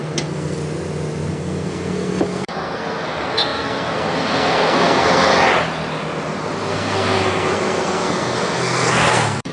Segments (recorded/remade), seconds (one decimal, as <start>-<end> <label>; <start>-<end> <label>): 0.0-0.6 remade; 0.6-1.3 recorded; 1.3-5.3 remade; 5.3-6.7 recorded; 6.7-9.5 remade